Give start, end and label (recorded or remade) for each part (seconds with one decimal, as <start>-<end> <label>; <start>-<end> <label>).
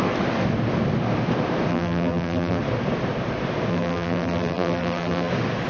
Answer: 0.0-1.7 recorded; 1.7-2.6 remade; 2.6-3.7 recorded; 3.7-5.3 remade; 5.3-5.7 recorded